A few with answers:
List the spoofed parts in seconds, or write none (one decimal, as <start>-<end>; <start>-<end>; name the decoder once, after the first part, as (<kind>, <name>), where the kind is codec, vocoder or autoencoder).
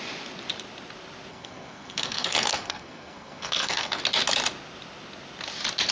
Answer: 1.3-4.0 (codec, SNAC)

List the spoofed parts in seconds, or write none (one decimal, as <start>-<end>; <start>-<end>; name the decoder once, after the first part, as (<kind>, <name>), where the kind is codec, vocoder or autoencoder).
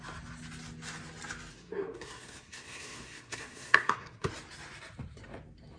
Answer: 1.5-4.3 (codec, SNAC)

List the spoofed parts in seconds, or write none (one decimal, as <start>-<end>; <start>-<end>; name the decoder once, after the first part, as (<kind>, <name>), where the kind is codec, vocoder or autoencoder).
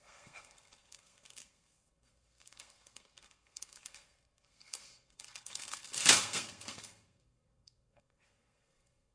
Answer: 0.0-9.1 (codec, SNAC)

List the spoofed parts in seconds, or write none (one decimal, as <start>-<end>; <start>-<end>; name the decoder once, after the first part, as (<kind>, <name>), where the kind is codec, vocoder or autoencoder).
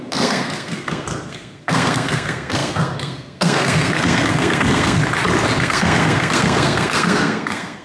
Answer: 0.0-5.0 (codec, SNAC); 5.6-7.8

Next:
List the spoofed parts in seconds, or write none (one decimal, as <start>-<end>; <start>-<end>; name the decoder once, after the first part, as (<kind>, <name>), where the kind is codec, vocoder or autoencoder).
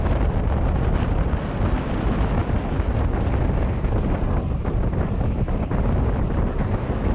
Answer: none